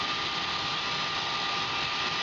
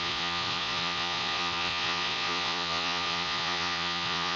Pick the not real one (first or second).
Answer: second